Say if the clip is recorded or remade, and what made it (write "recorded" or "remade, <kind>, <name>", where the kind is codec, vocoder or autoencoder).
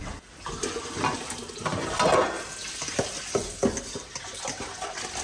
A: recorded